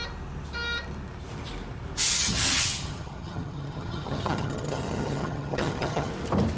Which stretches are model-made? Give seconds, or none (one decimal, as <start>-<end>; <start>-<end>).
2.1-6.1